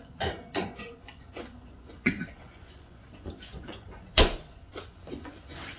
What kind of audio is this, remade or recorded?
remade